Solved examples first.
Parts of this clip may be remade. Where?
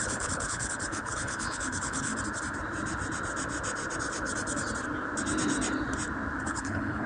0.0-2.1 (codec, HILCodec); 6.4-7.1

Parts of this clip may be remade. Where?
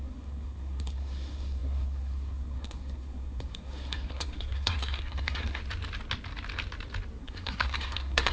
0.0-5.6 (codec, SNAC); 7.2-8.3